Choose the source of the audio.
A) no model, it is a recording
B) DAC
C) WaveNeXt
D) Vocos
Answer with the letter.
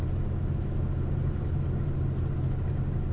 A